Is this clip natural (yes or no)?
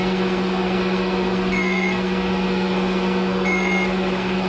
no